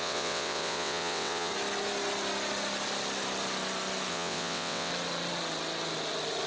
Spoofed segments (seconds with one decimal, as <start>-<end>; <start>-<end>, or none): 0.0-1.5; 4.1-4.9